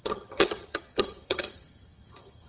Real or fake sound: fake